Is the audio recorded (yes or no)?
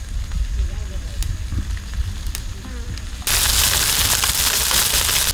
yes